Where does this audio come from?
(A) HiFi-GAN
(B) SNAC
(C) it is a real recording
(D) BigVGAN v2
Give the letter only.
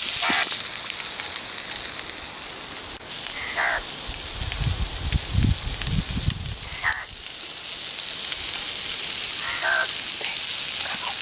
C